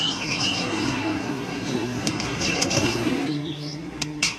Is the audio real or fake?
fake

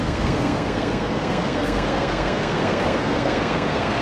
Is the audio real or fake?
fake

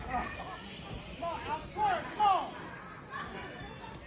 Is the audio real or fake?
real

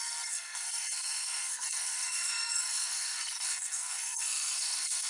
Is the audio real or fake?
fake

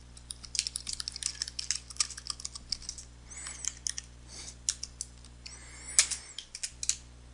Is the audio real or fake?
real